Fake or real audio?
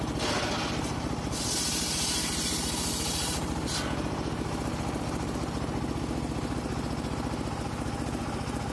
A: real